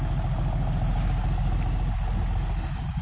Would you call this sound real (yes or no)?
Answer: yes